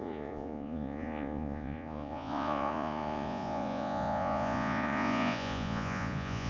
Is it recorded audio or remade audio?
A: remade